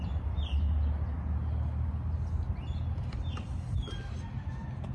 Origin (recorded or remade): recorded